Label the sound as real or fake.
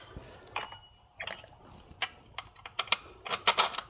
real